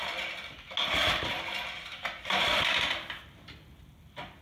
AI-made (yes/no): no